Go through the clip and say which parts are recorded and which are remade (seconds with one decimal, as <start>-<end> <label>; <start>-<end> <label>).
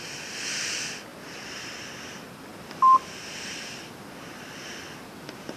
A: 0.0-1.1 recorded; 1.1-1.9 remade; 1.9-2.5 recorded; 2.5-5.1 remade; 5.1-5.6 recorded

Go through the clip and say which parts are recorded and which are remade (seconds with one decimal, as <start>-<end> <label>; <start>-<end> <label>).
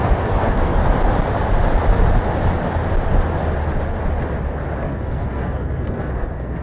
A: 0.0-0.8 remade; 0.8-4.8 recorded; 4.8-6.6 remade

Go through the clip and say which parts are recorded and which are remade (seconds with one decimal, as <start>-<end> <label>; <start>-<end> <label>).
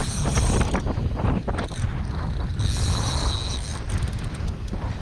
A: 0.0-5.0 recorded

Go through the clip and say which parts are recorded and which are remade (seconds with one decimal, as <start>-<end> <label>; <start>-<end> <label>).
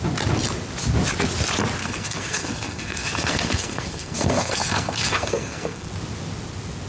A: 0.0-1.8 recorded; 1.8-5.9 remade; 5.9-6.9 recorded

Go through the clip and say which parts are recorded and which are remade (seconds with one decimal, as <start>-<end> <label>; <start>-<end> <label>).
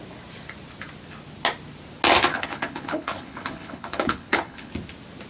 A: 0.0-2.3 recorded; 2.3-4.7 remade; 4.7-5.3 recorded